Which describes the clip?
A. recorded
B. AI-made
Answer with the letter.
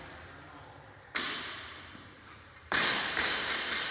B